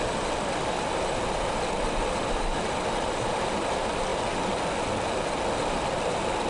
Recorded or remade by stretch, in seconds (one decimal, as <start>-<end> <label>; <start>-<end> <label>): 0.0-6.5 recorded

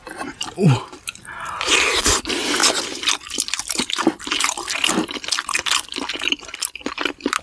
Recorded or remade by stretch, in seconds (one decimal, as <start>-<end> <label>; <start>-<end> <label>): 0.0-2.6 recorded; 2.6-7.0 remade; 7.0-7.4 recorded

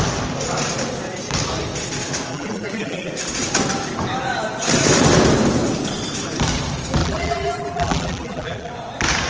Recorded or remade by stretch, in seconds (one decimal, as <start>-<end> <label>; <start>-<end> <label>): 0.0-2.3 recorded; 2.3-3.1 remade; 3.1-7.0 recorded; 7.0-8.7 remade; 8.7-9.3 recorded

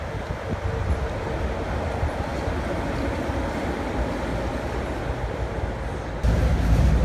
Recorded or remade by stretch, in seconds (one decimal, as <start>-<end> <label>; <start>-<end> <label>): 0.0-7.0 recorded

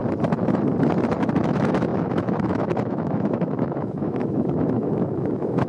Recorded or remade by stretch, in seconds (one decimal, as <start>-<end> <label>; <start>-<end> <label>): 0.0-1.4 recorded; 1.4-5.7 remade

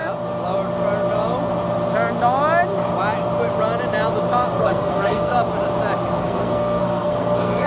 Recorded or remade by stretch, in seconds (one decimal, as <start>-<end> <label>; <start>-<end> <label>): 0.0-4.6 recorded; 4.6-5.3 remade; 5.3-6.2 recorded; 6.2-7.7 remade

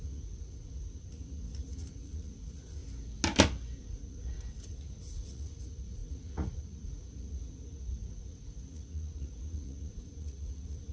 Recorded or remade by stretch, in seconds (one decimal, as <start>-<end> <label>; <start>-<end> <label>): 0.0-2.8 remade; 2.8-3.8 recorded; 3.8-10.9 remade

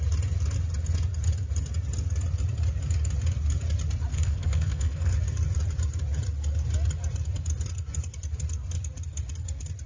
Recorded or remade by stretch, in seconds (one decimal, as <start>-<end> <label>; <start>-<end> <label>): 0.0-4.1 recorded; 4.1-5.1 remade; 5.1-9.9 recorded